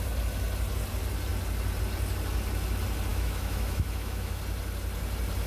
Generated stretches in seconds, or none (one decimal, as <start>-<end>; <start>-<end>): 3.1-4.4